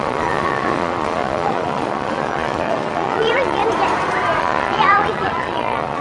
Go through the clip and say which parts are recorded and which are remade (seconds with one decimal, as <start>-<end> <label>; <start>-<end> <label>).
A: 0.0-3.6 remade; 3.6-4.4 recorded; 4.4-6.0 remade